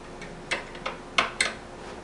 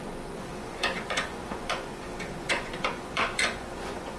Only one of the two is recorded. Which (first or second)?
first